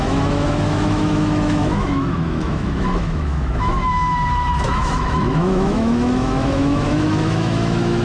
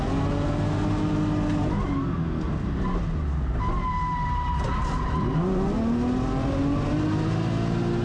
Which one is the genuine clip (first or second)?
second